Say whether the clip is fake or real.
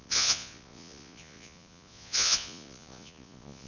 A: fake